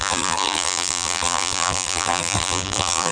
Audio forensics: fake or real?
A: fake